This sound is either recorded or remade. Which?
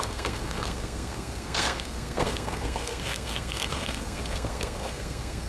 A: remade